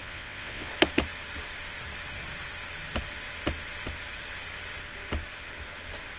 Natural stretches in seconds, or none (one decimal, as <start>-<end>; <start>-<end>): 0.7-6.2